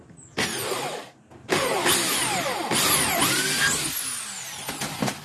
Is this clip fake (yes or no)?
no